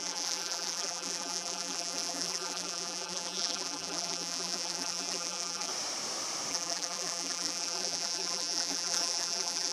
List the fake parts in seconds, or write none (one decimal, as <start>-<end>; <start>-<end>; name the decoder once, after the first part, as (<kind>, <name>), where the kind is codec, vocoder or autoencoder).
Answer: 0.0-5.7 (vocoder, BigVGAN v2); 6.5-9.7